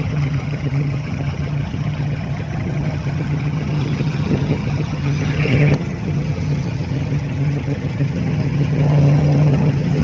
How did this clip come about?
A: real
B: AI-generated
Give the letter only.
B